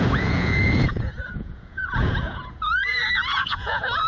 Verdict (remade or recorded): remade